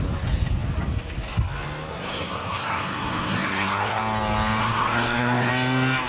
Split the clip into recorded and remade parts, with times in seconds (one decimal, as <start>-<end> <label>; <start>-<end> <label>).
0.0-1.9 recorded; 1.9-4.0 remade; 4.0-4.6 recorded; 4.6-5.5 remade; 5.5-6.1 recorded